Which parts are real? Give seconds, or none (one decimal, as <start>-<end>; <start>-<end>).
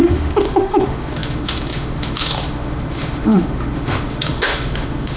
none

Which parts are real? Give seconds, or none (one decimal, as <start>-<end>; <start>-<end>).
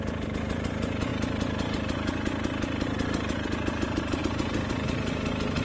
0.0-5.6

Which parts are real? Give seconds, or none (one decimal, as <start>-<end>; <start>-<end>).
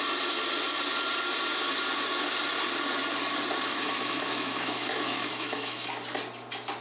0.0-3.7; 5.9-6.8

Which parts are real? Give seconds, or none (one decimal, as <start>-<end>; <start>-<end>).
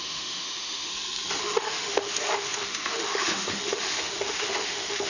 0.9-1.4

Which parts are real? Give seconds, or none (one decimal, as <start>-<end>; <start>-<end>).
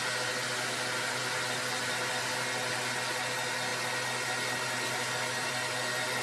0.0-6.2